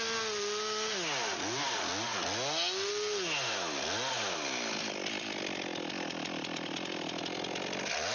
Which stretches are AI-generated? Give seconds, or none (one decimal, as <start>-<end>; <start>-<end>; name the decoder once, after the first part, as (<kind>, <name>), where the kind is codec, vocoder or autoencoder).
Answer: none